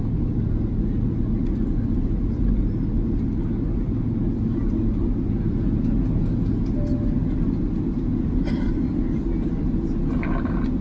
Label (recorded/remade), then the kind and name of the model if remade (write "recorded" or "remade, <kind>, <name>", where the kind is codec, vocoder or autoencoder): recorded